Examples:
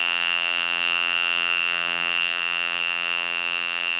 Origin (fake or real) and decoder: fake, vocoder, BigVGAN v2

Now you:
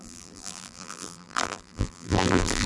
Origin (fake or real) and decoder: fake, vocoder, BigVGAN v2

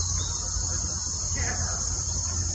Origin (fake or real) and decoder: real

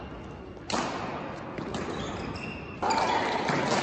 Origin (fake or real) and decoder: real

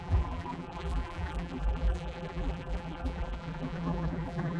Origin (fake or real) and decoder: fake, vocoder, BigVGAN v2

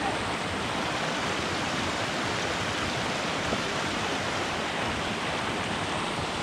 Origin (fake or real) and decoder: fake, vocoder, BigVGAN v2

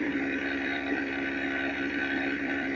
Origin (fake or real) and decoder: fake, vocoder, BigVGAN v2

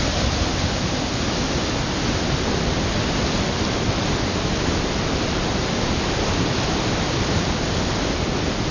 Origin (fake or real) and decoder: real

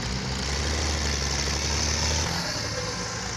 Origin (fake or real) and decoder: real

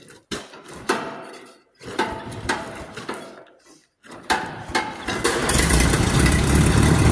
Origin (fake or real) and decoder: fake, vocoder, BigVGAN v2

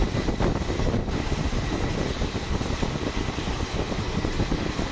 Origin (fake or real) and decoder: real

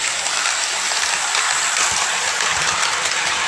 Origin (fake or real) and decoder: real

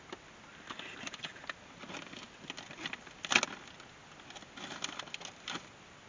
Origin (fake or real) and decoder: real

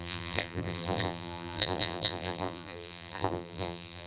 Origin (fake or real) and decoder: fake, vocoder, BigVGAN v2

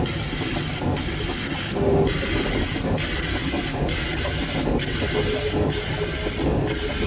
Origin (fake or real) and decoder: real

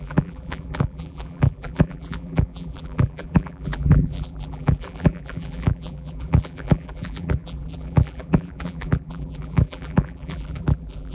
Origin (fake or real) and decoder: fake, vocoder, BigVGAN v2